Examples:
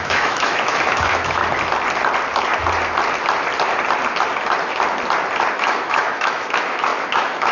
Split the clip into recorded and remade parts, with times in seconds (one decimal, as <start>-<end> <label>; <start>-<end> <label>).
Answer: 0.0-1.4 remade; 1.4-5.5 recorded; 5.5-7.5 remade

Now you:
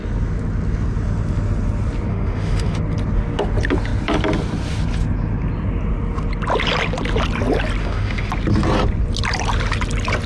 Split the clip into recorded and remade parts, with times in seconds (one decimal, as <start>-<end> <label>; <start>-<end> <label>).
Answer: 0.0-2.1 recorded; 2.1-2.8 remade; 2.8-7.8 recorded; 7.8-8.3 remade; 8.3-10.3 recorded

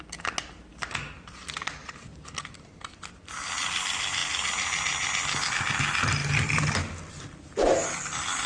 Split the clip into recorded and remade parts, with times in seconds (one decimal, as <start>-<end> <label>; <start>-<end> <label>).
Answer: 0.0-8.5 recorded

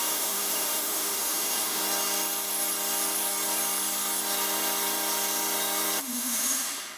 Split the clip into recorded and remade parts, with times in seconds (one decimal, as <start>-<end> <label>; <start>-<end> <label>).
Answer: 0.0-1.8 remade; 1.8-6.0 recorded; 6.0-7.0 remade

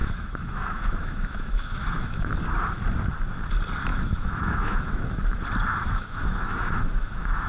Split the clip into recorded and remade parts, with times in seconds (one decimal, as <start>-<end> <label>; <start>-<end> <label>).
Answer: 0.0-2.3 remade; 2.3-3.9 recorded; 3.9-5.2 remade; 5.2-5.8 recorded; 5.8-7.5 remade